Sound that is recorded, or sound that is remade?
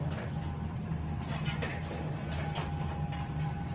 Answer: recorded